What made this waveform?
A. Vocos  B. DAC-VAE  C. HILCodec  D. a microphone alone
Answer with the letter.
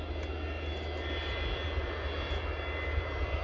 D